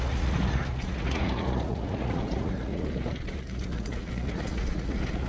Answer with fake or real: fake